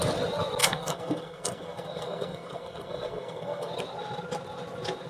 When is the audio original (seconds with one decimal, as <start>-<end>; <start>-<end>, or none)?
0.0-0.6; 3.7-5.1